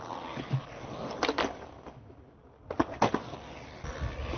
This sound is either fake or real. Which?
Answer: real